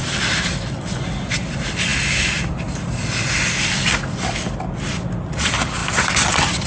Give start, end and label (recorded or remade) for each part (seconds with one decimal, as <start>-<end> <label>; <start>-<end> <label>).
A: 0.0-6.7 recorded